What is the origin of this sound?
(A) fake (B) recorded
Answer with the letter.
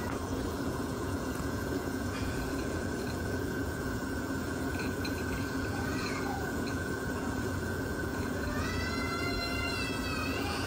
A